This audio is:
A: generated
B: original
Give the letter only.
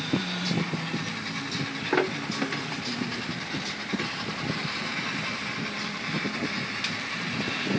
A